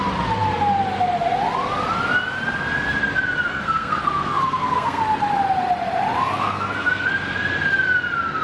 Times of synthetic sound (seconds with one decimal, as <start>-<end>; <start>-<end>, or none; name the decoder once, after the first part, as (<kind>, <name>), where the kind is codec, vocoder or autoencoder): 3.5-5.0 (codec, SNAC); 6.2-7.1